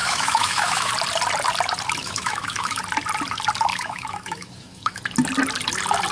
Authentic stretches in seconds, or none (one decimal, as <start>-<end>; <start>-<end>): 0.9-2.0; 2.8-3.7; 5.0-6.1